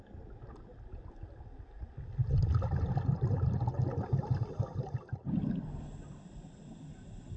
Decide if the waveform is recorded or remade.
recorded